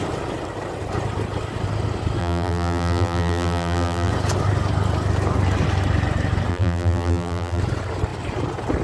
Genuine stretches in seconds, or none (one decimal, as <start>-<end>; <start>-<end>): 0.0-2.2; 4.1-6.5; 7.6-8.8